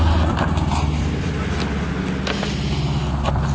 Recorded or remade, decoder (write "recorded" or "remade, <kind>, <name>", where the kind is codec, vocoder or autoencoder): recorded